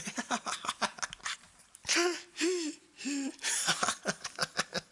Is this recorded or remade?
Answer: recorded